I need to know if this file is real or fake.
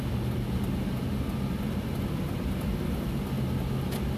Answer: real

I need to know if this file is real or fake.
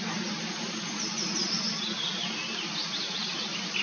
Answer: real